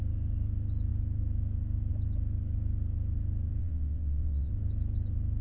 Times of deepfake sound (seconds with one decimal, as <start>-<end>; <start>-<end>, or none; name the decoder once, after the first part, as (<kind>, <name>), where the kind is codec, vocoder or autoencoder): 3.6-4.5 (vocoder, WaveNeXt)